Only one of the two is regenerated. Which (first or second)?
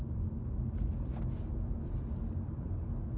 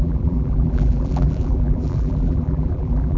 second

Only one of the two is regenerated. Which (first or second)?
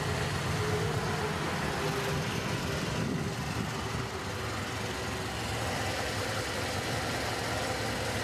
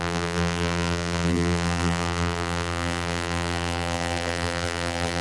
second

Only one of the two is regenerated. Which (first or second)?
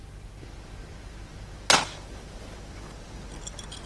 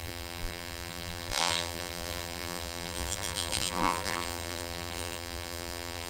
second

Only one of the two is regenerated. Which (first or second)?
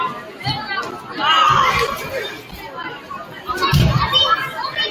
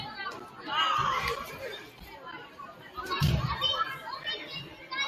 second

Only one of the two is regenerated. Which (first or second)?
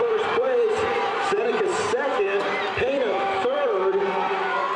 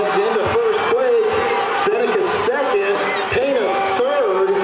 first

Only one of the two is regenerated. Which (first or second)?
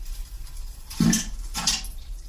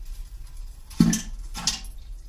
first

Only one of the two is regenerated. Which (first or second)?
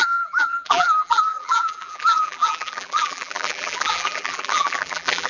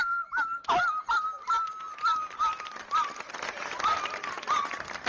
first